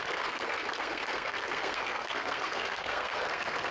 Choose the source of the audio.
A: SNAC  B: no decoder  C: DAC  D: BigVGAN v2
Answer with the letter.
A